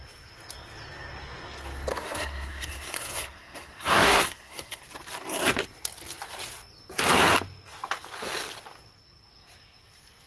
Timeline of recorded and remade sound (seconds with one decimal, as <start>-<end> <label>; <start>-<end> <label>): 0.0-1.9 recorded; 1.9-4.8 remade; 4.8-10.3 recorded